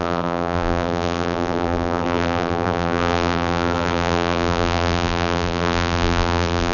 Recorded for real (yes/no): no